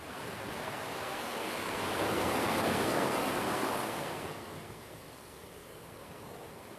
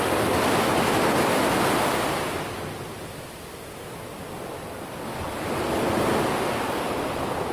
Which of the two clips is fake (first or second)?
first